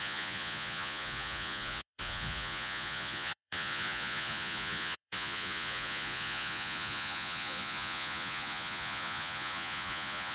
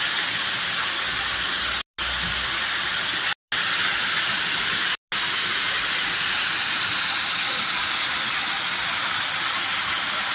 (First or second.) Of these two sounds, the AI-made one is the first